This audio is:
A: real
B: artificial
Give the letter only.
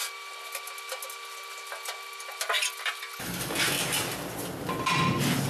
A